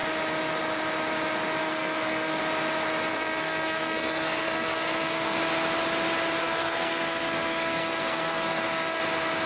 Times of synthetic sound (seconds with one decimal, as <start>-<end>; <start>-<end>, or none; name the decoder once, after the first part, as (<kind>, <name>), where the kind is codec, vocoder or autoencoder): 1.6-2.4 (codec, SNAC); 3.1-5.4; 6.4-9.0